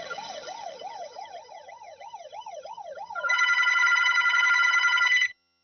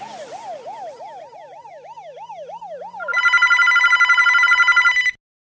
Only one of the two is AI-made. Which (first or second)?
first